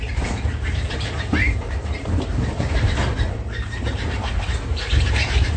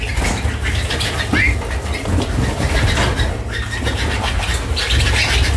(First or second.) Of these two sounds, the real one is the second